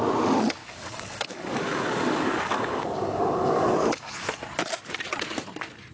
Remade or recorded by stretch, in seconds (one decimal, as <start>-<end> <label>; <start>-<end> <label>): 0.0-0.6 recorded; 0.6-4.1 remade; 4.1-5.9 recorded